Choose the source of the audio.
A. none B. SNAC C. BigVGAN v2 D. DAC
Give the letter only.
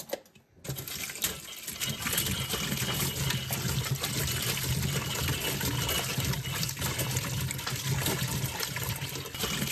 A